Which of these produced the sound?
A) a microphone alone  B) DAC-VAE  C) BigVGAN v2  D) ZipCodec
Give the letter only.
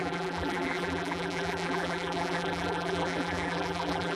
C